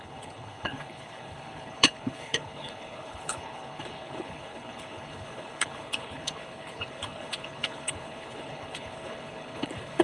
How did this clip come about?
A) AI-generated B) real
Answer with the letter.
A